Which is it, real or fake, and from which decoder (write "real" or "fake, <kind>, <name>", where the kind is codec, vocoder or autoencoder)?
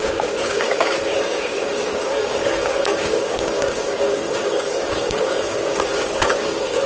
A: fake, codec, DAC